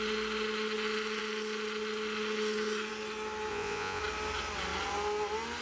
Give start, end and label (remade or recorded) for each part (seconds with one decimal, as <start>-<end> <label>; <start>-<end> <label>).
0.0-3.5 recorded; 3.5-4.0 remade; 4.0-5.6 recorded

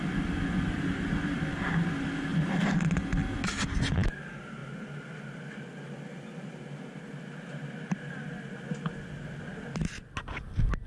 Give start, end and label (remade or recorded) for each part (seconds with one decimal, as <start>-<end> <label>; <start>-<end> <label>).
0.0-10.9 recorded

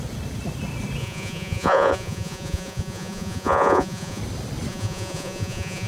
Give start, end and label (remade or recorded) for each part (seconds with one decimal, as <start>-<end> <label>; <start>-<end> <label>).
0.0-1.0 recorded; 1.0-4.2 remade; 4.2-4.7 recorded; 4.7-5.9 remade

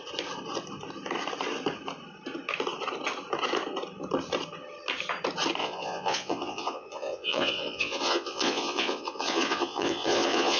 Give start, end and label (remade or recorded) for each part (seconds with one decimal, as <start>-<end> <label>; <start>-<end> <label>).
0.0-5.6 recorded; 5.6-10.6 remade

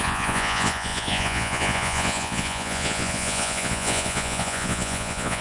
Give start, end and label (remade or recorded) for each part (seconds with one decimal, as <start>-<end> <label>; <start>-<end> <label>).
0.0-5.4 remade

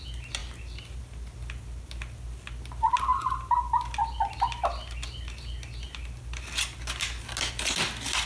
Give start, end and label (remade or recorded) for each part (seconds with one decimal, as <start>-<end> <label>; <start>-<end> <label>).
0.0-8.3 recorded

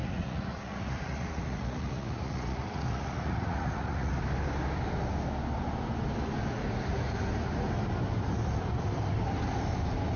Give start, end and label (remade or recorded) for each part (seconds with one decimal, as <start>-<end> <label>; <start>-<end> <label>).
0.0-4.1 remade; 4.1-10.2 recorded

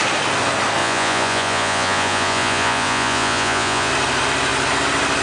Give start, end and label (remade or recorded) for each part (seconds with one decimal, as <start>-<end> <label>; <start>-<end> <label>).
0.0-0.8 recorded; 0.8-3.9 remade; 3.9-5.2 recorded